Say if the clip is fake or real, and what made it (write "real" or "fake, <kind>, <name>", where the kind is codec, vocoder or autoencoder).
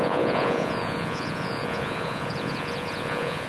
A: fake, vocoder, Vocos